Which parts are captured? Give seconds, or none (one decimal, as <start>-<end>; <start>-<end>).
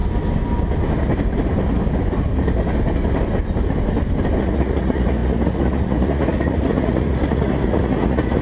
0.0-4.4